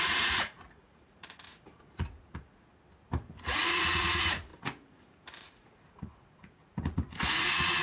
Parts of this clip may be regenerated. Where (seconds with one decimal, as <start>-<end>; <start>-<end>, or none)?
0.0-2.7; 3.3-7.8